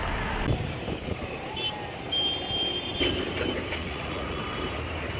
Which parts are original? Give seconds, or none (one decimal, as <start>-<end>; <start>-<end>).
0.0-3.8; 4.4-5.2